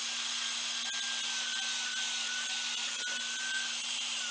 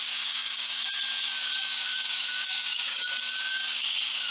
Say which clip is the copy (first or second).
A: second